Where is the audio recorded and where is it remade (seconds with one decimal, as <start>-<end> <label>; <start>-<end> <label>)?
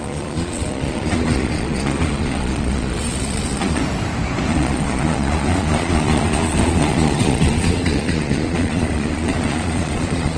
0.0-3.8 remade; 3.8-4.5 recorded; 4.5-10.4 remade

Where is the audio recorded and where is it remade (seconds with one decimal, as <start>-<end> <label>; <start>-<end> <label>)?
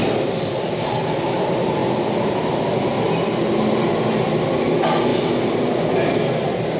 0.0-6.8 recorded